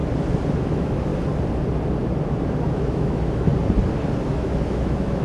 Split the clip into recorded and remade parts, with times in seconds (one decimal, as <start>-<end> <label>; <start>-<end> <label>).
0.0-0.6 recorded; 0.6-1.1 remade; 1.1-2.6 recorded; 2.6-3.5 remade; 3.5-4.2 recorded; 4.2-5.2 remade